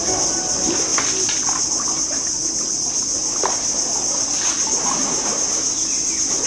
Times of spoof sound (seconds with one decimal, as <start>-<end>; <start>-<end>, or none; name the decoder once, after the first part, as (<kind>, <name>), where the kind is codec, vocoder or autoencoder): none